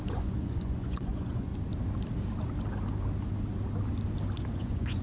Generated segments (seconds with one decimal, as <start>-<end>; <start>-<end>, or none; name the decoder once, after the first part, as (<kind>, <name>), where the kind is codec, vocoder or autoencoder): 0.0-1.5 (vocoder, Vocos); 4.5-5.0